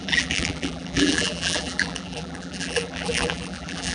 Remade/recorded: remade